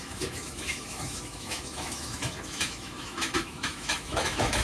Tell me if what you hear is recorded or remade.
remade